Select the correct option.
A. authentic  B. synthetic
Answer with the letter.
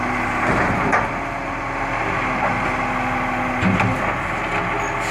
A